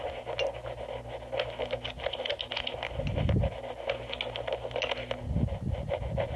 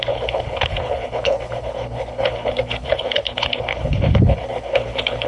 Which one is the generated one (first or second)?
second